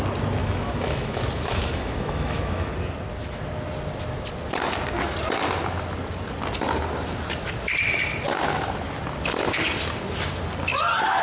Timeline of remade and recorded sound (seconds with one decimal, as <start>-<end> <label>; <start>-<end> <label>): 0.0-0.4 recorded; 0.4-2.7 remade; 2.7-11.2 recorded

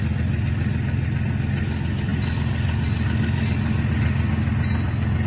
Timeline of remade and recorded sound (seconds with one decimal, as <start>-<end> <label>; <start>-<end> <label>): 0.0-5.3 recorded

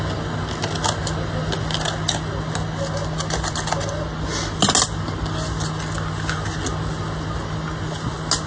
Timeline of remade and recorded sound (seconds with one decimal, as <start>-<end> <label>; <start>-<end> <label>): 0.0-8.5 recorded

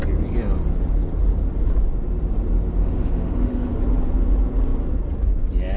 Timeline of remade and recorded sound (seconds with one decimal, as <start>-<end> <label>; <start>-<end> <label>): 0.0-2.8 recorded; 2.8-3.7 remade; 3.7-5.8 recorded

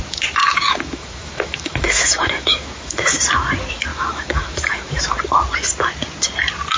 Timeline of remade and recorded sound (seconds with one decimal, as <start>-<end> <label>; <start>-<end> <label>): 0.0-0.4 recorded; 0.4-3.2 remade; 3.2-3.9 recorded; 3.9-5.0 remade; 5.0-6.8 recorded

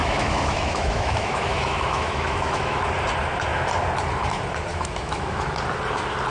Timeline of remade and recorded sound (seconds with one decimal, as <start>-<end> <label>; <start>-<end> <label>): 0.0-2.9 remade; 2.9-4.7 recorded; 4.7-5.4 remade; 5.4-6.3 recorded

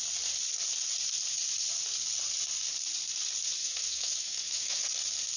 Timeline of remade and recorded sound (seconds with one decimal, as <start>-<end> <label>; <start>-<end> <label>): 0.0-3.6 recorded; 3.6-4.8 remade; 4.8-5.4 recorded